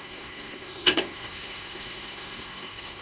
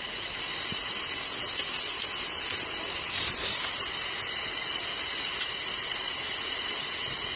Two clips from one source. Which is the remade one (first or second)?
first